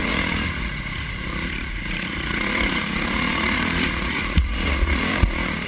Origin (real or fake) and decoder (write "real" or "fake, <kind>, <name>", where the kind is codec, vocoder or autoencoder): fake, vocoder, Vocos